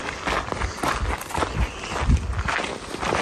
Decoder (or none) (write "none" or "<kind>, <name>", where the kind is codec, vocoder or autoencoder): none